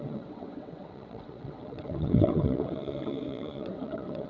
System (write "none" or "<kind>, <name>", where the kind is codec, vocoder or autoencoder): vocoder, WaveNeXt